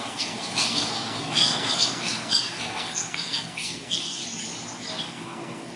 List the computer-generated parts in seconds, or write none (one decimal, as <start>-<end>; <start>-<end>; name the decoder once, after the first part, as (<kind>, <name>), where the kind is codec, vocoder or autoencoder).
0.0-4.2 (codec, SNAC); 5.0-5.8